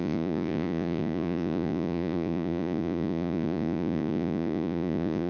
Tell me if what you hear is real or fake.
fake